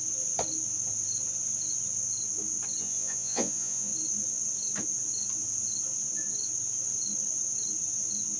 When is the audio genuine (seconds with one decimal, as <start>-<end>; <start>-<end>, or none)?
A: 0.0-2.8; 3.9-8.4